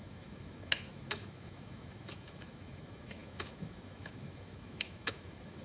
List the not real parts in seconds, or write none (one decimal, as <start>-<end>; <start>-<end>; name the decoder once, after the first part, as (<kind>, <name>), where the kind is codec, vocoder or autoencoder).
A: 0.0-5.6 (autoencoder, DAC-VAE)